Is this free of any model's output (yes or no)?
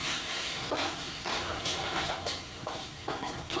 no